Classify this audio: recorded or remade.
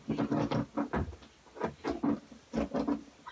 recorded